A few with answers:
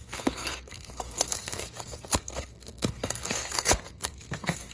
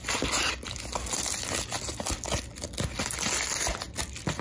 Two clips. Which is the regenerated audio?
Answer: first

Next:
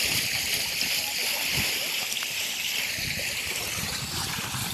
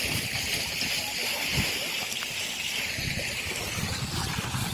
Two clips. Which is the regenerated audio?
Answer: first